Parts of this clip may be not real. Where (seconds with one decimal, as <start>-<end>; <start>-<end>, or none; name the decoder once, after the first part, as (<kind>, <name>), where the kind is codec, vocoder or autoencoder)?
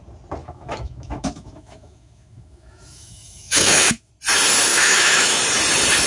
0.4-4.1 (autoencoder, DAC-VAE); 4.7-5.4